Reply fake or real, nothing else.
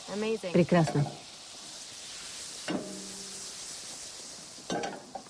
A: real